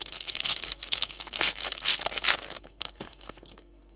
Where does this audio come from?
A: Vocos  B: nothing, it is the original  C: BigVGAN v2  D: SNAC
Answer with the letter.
D